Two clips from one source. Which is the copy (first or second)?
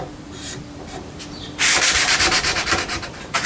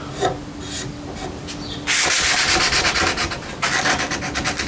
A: first